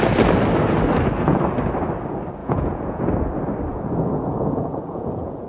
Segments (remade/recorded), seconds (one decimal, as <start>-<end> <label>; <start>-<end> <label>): 0.0-2.4 recorded; 2.4-3.0 remade; 3.0-3.7 recorded; 3.7-5.5 remade